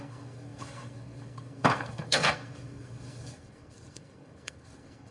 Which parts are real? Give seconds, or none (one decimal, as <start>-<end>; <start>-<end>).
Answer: none